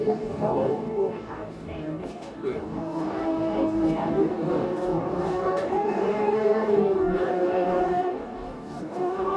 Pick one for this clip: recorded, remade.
remade